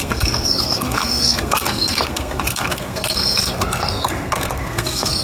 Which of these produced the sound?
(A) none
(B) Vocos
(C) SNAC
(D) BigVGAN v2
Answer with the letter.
C